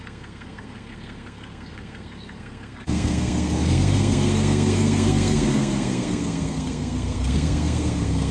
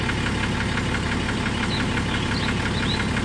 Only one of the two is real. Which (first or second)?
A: second